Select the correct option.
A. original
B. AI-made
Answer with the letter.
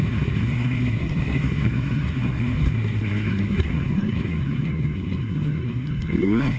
B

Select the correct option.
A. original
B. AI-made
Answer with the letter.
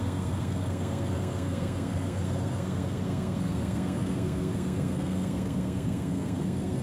B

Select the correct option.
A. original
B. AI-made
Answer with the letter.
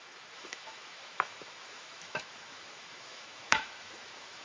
B